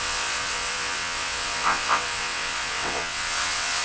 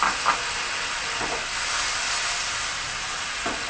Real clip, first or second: second